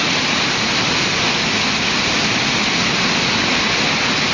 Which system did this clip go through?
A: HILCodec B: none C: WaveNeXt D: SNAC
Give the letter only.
B